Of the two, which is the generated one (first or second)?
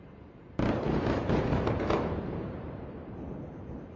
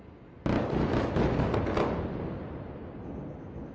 first